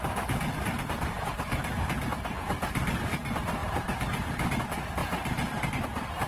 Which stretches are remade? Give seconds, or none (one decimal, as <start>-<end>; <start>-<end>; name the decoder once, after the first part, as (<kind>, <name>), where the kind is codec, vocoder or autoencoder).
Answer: none